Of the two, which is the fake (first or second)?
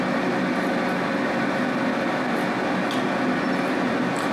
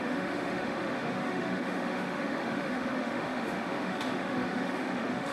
second